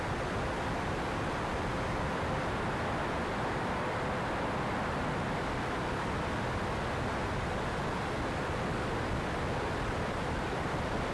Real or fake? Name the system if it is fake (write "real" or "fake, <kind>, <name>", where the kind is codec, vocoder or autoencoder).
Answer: real